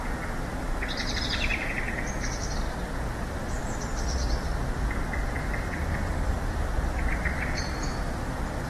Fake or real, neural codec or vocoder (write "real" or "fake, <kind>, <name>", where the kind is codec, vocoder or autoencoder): real